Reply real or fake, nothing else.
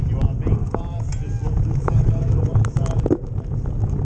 real